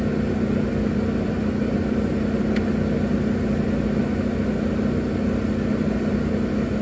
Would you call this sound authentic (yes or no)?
yes